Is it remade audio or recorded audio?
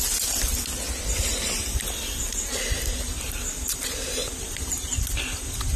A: recorded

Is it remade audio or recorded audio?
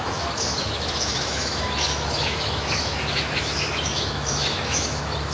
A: remade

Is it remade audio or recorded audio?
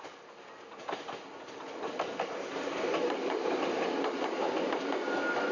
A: recorded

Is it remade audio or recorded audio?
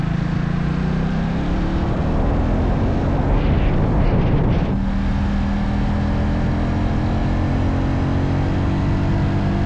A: recorded